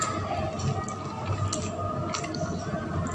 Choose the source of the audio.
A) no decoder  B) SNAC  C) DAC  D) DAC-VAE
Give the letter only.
A